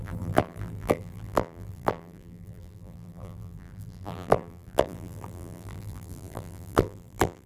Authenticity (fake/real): fake